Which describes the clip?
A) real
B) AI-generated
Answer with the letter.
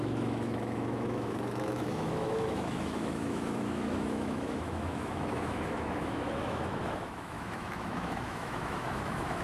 B